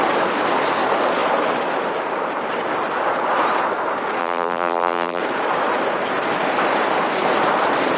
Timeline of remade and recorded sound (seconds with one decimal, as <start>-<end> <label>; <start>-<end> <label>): 0.0-4.2 recorded; 4.2-5.2 remade; 5.2-8.0 recorded